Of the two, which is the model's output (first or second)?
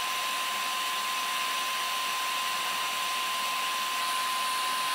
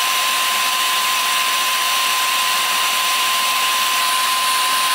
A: second